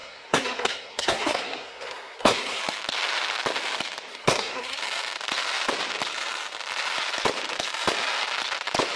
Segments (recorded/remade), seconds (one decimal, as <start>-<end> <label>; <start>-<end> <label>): 0.0-2.6 remade; 2.6-4.1 recorded; 4.1-4.8 remade; 4.8-9.0 recorded